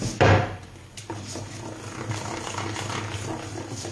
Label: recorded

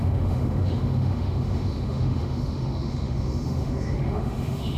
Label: remade